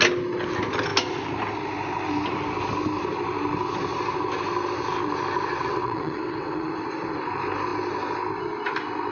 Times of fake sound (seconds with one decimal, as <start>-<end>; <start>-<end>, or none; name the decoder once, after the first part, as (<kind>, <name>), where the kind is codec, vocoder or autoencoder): 5.5-6.7 (vocoder, WaveNeXt)